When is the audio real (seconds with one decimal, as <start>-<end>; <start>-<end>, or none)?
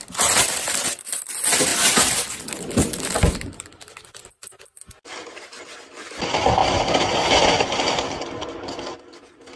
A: 0.0-9.6